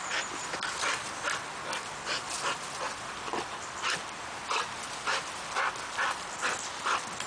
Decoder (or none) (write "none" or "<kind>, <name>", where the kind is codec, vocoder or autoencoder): none